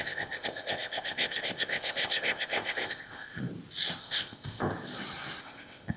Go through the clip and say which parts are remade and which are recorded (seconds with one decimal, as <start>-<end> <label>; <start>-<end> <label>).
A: 0.0-3.5 remade; 3.5-4.0 recorded; 4.0-4.7 remade; 4.7-5.4 recorded; 5.4-6.0 remade